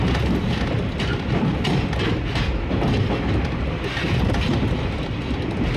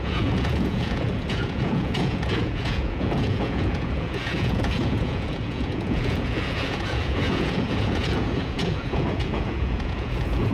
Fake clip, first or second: second